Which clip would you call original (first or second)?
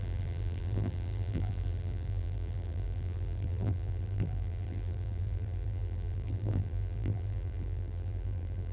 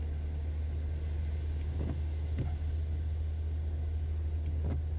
second